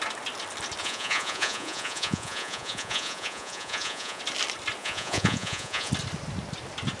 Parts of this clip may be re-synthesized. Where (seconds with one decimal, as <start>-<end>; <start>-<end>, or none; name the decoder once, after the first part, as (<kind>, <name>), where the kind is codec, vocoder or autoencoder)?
0.8-4.2 (vocoder, Vocos); 4.8-5.9